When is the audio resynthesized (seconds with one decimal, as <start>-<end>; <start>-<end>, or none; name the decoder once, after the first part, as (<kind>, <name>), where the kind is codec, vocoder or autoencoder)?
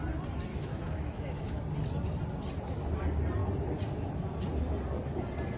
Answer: 0.5-1.6 (autoencoder, DAC-VAE)